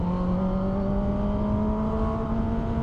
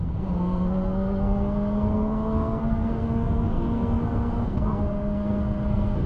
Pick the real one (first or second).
first